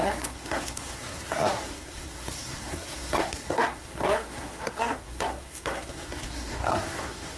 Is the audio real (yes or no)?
no